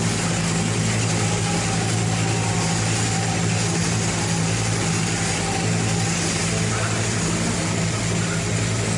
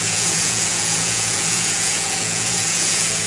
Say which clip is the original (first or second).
first